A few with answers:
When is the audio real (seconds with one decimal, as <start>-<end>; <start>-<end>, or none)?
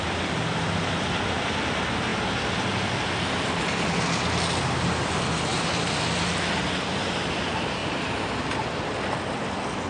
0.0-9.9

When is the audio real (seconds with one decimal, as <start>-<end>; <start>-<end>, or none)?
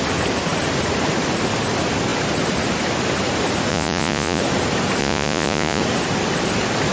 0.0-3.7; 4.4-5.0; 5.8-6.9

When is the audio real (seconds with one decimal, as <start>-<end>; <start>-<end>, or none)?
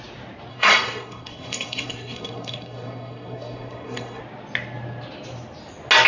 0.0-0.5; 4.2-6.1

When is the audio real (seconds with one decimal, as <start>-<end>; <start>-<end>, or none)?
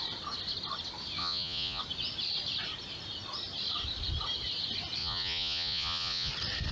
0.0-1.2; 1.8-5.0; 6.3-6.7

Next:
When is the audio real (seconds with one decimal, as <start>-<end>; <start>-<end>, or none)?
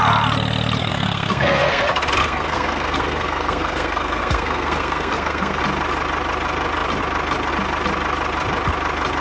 0.0-0.8; 1.8-2.2; 5.6-9.2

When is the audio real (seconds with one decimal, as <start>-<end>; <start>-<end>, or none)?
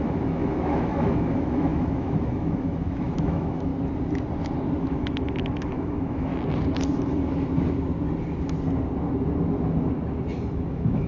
3.7-4.8; 6.3-10.7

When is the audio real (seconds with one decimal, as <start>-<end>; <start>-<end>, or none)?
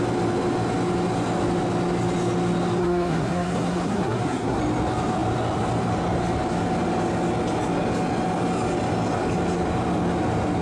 0.0-2.8; 4.6-10.6